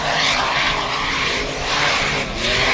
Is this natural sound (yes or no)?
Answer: yes